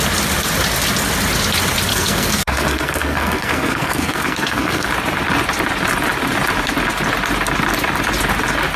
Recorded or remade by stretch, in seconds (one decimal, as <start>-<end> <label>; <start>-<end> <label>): 0.0-1.9 recorded; 1.9-4.9 remade; 4.9-8.8 recorded